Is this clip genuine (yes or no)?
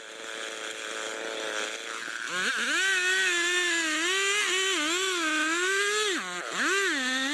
yes